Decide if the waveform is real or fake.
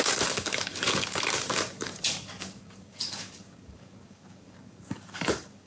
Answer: fake